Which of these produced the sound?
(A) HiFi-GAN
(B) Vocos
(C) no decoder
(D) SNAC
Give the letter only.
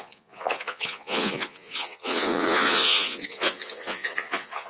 B